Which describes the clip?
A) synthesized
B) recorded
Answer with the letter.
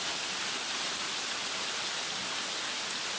B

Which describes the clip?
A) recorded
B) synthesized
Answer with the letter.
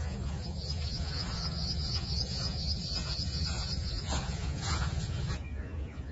B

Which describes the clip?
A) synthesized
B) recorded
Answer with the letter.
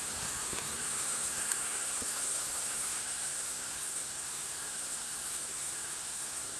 A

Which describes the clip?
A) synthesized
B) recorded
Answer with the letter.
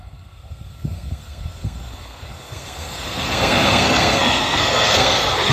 A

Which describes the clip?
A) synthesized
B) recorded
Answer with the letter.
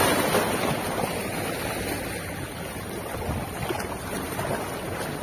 B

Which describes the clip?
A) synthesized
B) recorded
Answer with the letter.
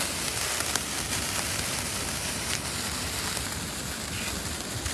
B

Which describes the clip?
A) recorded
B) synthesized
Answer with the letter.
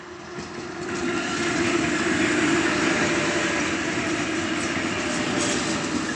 A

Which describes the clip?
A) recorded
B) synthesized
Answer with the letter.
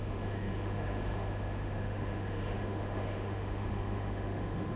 B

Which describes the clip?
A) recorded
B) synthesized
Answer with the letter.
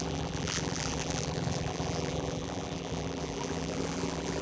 B